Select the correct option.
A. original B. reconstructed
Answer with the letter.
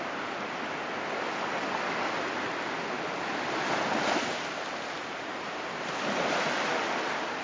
A